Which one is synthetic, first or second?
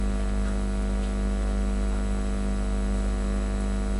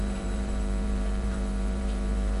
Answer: second